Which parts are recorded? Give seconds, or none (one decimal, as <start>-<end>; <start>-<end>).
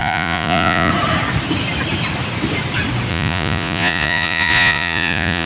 0.9-3.1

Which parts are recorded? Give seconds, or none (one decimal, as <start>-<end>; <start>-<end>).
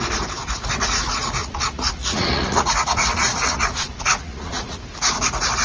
0.0-1.4; 4.8-5.6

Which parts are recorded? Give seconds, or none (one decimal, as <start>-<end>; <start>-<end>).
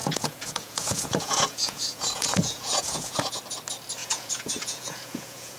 3.4-4.0